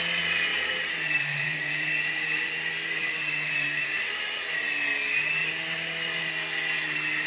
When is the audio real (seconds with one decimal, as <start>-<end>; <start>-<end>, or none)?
0.0-0.5; 4.0-7.3